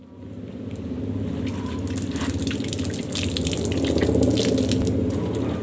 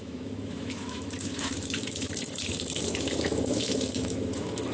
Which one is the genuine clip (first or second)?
first